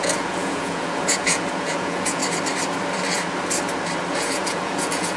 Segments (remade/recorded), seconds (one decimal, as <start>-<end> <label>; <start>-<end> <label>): 0.0-2.2 remade; 2.2-4.1 recorded; 4.1-5.2 remade